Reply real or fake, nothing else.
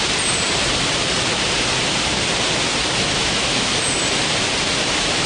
real